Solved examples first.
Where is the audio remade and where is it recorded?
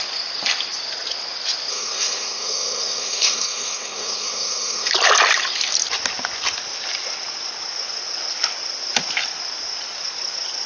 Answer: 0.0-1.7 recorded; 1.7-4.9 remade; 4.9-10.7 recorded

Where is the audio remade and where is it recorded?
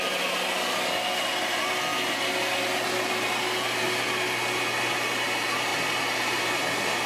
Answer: 0.0-5.7 recorded; 5.7-6.4 remade; 6.4-7.1 recorded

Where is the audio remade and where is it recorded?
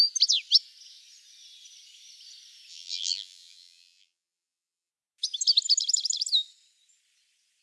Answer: 0.0-2.7 recorded; 2.7-4.9 remade; 4.9-7.6 recorded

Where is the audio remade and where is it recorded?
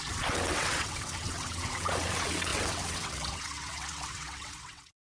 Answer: 0.0-5.1 remade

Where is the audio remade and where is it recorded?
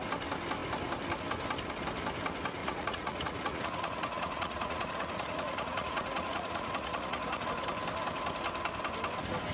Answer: 0.0-2.6 recorded; 2.6-7.5 remade; 7.5-9.5 recorded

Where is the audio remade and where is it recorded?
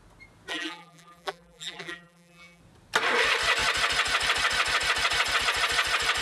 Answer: 0.0-0.5 recorded; 0.5-2.6 remade; 2.6-6.2 recorded